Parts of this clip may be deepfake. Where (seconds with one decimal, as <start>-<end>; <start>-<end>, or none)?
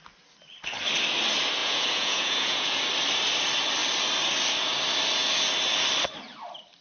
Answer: 1.6-2.8